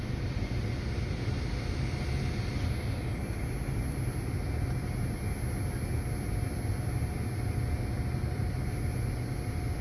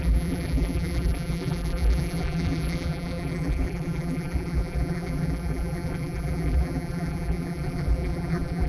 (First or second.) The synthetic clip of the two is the second